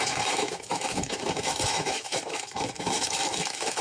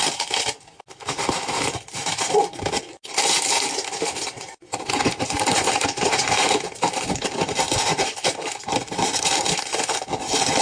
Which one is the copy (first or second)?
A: first